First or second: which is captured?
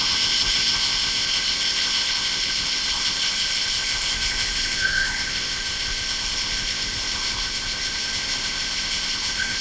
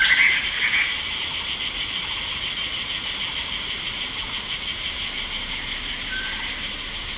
second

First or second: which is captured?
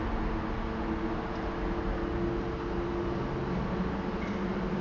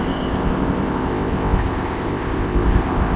first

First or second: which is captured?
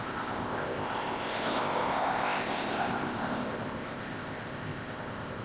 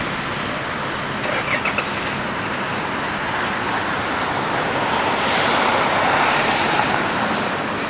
second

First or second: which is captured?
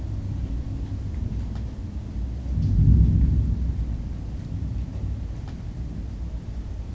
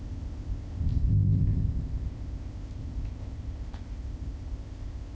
first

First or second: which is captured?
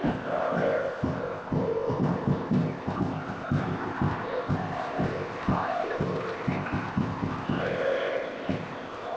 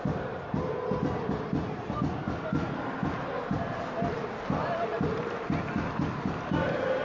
second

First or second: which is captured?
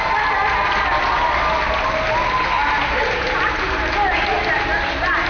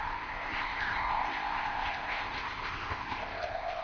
first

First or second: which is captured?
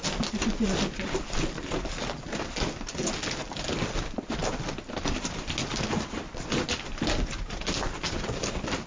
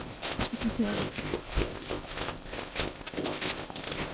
first